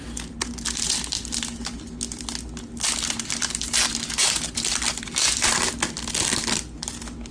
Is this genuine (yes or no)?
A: yes